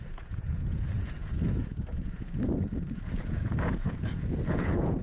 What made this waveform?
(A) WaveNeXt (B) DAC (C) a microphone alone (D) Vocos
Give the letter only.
D